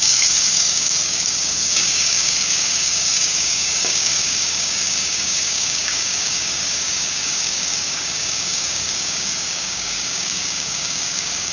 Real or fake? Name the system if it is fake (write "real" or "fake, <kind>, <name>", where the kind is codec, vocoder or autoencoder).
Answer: fake, codec, DAC